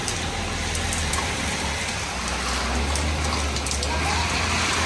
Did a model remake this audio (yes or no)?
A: no